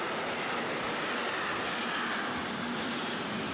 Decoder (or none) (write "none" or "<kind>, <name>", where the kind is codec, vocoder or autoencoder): none